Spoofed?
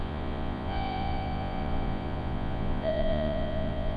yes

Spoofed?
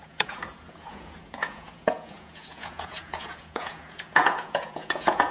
yes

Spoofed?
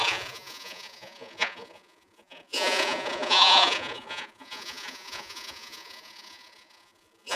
yes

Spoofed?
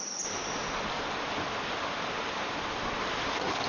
no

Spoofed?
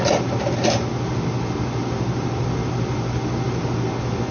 no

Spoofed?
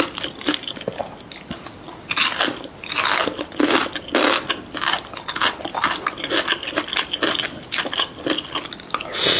no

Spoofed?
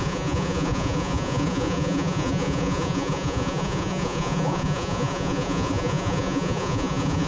yes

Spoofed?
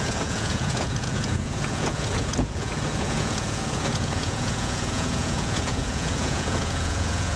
yes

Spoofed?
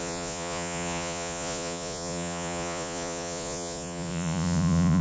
yes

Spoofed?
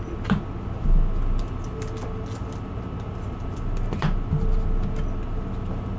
no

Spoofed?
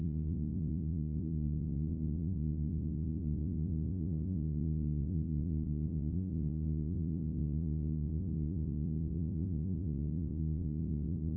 yes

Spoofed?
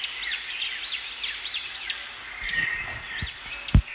no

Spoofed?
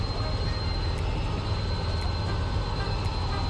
no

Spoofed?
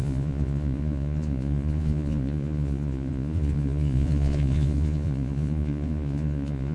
yes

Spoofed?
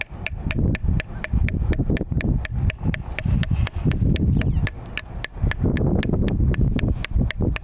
no